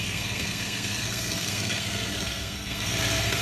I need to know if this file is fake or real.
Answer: fake